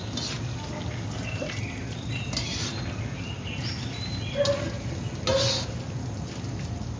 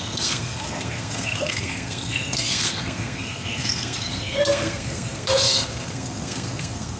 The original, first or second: first